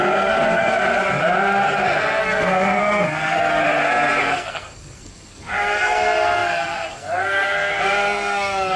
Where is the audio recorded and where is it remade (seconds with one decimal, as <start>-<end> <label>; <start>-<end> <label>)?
0.0-0.9 remade; 0.9-2.2 recorded; 2.2-3.5 remade; 3.5-4.2 recorded; 4.2-8.8 remade